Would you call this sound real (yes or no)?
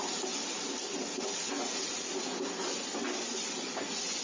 yes